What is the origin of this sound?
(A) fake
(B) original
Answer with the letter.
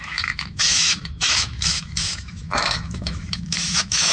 A